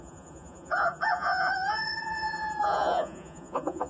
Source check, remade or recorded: remade